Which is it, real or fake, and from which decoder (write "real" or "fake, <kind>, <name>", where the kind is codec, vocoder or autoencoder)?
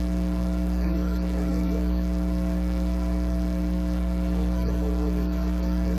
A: fake, codec, SNAC